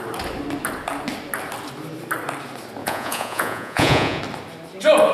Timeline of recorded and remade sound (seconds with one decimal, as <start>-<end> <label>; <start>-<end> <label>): 0.0-2.8 recorded; 2.8-4.2 remade; 4.2-5.1 recorded